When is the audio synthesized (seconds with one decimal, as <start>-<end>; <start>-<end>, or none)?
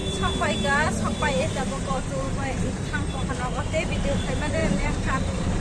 0.0-3.3; 4.6-5.6